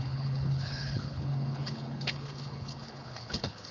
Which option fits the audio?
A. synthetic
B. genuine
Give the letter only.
A